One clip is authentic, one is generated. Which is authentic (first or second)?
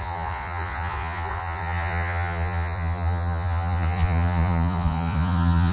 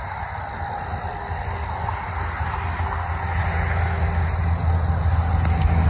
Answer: second